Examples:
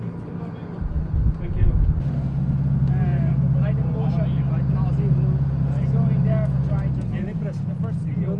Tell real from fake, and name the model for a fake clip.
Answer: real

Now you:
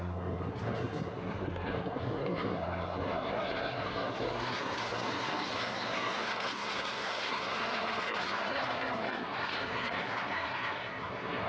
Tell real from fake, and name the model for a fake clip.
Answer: fake, codec, SNAC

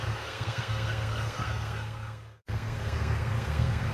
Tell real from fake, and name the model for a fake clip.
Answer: fake, codec, SNAC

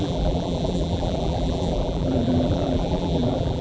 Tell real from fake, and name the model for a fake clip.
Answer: fake, vocoder, BigVGAN v2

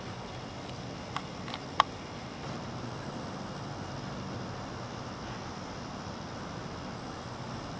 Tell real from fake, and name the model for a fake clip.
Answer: real